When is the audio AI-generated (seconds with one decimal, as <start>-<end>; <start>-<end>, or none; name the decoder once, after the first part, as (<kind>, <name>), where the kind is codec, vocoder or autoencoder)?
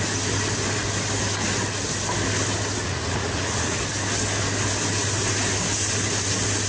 2.8-3.8 (vocoder, Vocos)